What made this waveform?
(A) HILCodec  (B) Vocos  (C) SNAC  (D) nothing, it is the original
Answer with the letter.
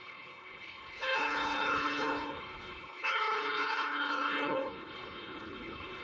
A